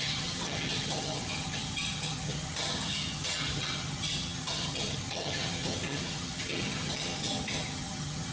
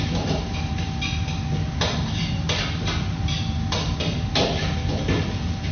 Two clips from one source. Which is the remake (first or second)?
first